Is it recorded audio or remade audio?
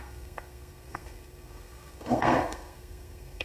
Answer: remade